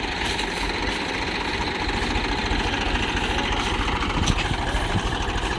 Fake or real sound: real